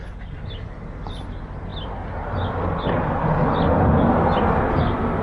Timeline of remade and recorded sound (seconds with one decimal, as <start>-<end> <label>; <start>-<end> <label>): 0.0-5.2 recorded